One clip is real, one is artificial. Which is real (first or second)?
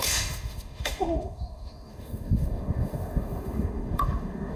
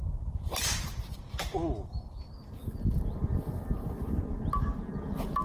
second